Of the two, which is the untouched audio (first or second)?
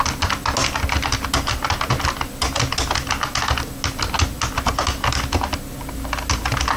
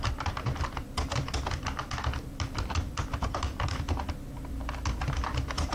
first